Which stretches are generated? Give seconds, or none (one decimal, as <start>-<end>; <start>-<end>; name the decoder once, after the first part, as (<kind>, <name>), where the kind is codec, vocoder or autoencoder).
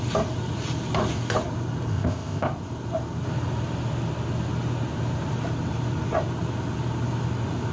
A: 1.9-2.5 (codec, ZipCodec)